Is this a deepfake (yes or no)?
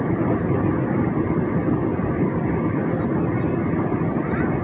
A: no